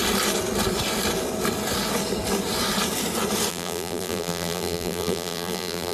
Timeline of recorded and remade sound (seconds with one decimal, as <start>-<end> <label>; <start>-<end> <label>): 0.0-3.5 recorded; 3.5-5.9 remade